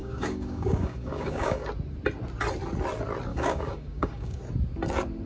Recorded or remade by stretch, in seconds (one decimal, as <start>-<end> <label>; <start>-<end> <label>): 0.0-1.7 remade; 1.7-3.3 recorded; 3.3-4.4 remade; 4.4-5.3 recorded